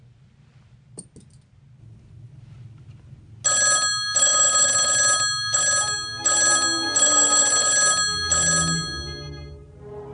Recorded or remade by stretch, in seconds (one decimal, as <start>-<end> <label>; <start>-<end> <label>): 0.0-10.1 recorded